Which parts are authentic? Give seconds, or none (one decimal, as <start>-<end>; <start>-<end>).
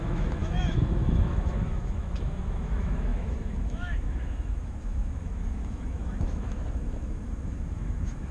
none